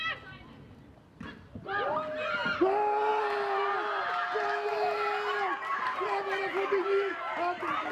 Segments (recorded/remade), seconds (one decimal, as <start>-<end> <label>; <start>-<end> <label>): 0.0-5.7 recorded; 5.7-7.1 remade; 7.1-7.9 recorded